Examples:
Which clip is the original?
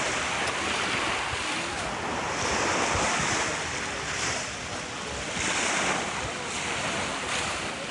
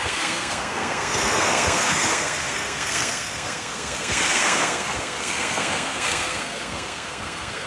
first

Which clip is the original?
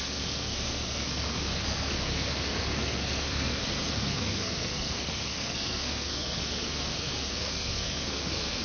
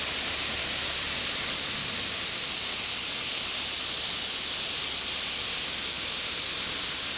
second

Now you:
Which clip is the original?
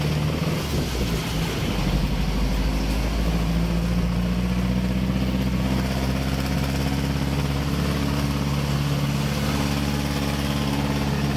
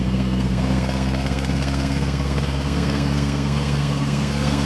first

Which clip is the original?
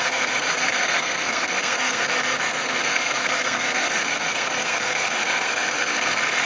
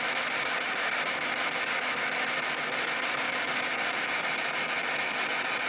second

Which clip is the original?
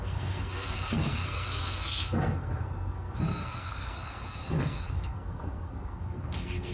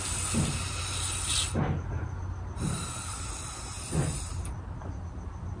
second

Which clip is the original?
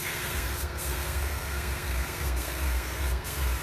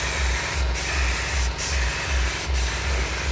second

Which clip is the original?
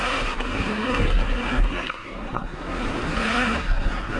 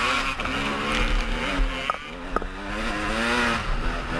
second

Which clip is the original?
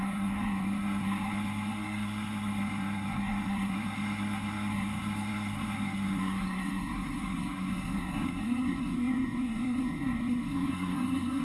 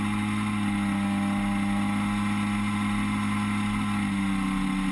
second